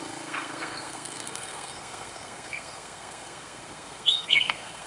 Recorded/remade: remade